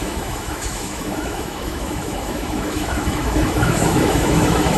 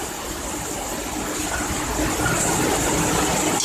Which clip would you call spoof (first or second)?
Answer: first